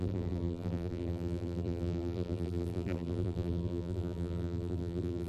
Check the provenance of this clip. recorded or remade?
remade